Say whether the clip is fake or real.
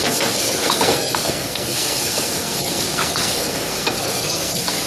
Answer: fake